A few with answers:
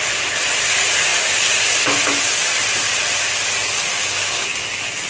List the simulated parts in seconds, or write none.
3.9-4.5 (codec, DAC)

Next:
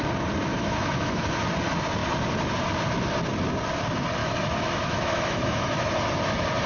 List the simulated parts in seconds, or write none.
0.5-1.3 (autoencoder, DAC-VAE); 4.2-5.9

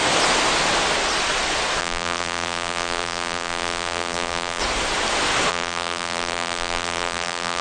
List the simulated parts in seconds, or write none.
1.8-4.6 (vocoder, BigVGAN v2); 5.5-7.6

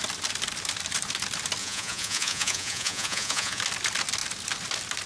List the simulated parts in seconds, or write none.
1.6-3.6 (vocoder, Vocos)

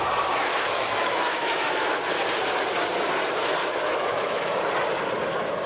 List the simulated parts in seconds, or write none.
0.4-2.0 (autoencoder, DAC-VAE); 3.6-4.6

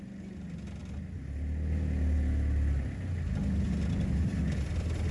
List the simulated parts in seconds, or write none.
none

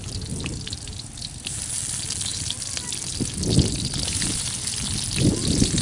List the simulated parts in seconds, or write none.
none